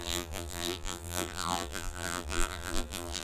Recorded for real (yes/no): no